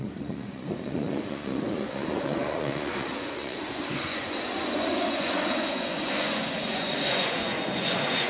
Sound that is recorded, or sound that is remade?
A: remade